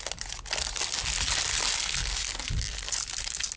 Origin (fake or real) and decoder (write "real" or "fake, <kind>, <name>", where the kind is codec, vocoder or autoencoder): real